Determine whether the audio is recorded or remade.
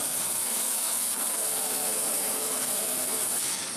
remade